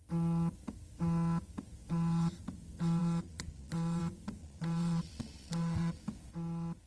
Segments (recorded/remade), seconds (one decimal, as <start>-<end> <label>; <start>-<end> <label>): 0.0-3.0 recorded; 3.0-4.0 remade; 4.0-4.4 recorded; 4.4-6.0 remade; 6.0-6.9 recorded